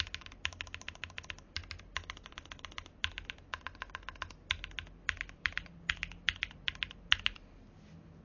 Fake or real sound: real